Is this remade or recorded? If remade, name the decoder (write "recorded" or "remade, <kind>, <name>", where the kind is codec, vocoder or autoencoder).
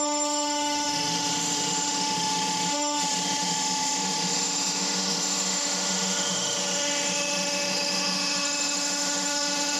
remade, autoencoder, DAC-VAE